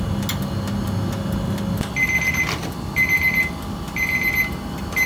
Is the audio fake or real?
real